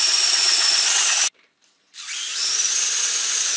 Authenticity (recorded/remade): recorded